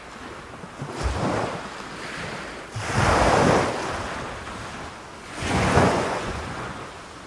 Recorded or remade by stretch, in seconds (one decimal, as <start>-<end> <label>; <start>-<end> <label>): 0.0-5.2 recorded; 5.2-6.8 remade; 6.8-7.3 recorded